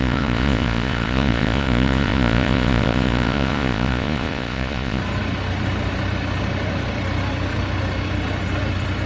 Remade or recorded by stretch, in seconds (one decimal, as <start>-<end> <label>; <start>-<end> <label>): 0.0-5.0 remade; 5.0-9.1 recorded